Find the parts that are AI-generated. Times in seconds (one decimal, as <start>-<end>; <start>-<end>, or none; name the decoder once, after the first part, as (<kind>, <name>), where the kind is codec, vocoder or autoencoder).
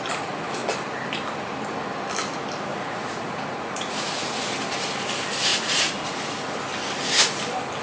2.7-4.5 (vocoder, Vocos); 5.5-6.0